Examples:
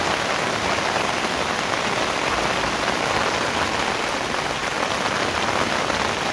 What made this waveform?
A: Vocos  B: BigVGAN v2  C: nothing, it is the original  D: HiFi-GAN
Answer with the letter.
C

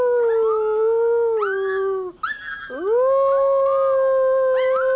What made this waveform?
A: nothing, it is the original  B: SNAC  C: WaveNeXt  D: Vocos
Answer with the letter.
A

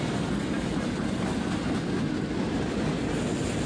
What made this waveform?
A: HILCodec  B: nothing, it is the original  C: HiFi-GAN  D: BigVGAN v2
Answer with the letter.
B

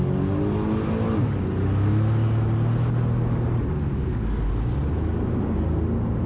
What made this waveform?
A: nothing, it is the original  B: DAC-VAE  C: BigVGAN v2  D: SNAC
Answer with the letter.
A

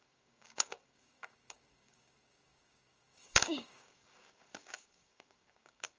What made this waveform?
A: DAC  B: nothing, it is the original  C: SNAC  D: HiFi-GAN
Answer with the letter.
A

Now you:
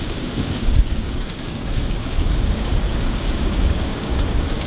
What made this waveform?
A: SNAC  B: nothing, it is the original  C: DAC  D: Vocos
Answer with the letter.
C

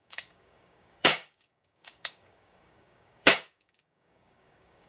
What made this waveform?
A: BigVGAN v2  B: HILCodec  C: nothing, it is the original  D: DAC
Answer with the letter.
D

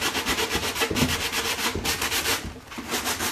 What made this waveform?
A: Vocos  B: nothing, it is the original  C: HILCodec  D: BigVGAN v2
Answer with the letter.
B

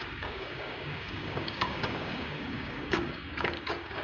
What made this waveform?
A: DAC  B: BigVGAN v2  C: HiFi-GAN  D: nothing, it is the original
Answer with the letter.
A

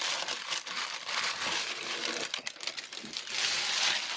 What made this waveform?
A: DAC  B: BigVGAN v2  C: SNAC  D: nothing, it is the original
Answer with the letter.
D